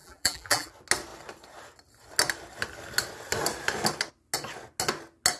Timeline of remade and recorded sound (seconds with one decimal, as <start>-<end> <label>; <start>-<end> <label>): 0.0-0.7 remade; 0.7-5.4 recorded